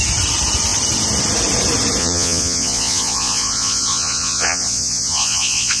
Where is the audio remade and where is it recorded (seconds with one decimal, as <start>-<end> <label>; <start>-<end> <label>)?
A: 0.0-2.0 recorded; 2.0-5.8 remade